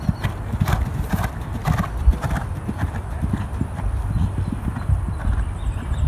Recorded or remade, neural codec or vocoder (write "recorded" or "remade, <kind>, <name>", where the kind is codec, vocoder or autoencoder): recorded